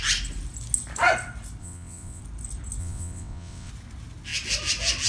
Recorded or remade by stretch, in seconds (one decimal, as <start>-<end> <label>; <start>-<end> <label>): 0.0-1.6 recorded; 1.6-2.2 remade; 2.2-2.8 recorded; 2.8-3.7 remade; 3.7-5.1 recorded